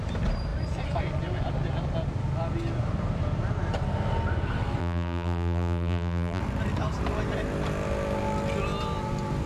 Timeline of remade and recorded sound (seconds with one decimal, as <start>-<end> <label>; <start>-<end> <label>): 0.0-4.8 recorded; 4.8-6.4 remade; 6.4-9.5 recorded